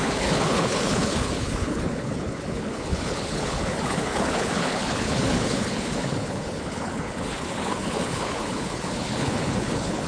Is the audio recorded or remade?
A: remade